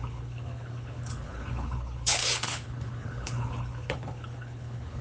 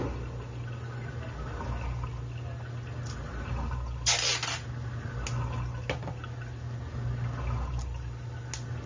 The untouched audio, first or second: second